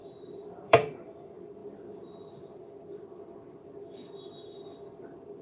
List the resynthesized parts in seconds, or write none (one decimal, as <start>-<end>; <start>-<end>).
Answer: 0.0-1.6; 4.8-5.4